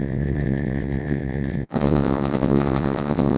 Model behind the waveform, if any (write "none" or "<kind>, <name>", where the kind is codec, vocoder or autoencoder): vocoder, WaveNeXt